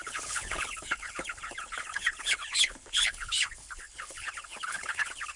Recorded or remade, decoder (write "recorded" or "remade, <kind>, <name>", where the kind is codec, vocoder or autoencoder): remade, codec, HILCodec